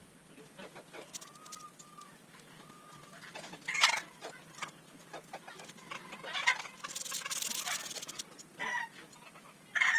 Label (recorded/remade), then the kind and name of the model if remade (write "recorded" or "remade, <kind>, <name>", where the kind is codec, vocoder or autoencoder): recorded